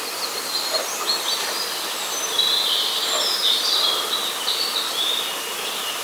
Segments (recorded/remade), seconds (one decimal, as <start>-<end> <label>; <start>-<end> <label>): 0.0-6.0 recorded

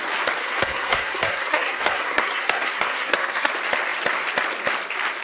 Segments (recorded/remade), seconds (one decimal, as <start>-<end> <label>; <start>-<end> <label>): 0.0-0.4 recorded; 0.4-3.5 remade; 3.5-5.2 recorded

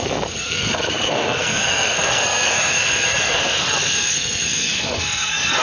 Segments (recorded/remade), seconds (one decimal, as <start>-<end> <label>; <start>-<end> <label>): 0.0-5.6 remade